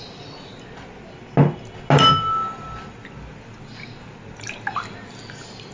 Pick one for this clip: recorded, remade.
recorded